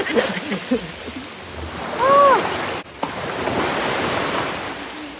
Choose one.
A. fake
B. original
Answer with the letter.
B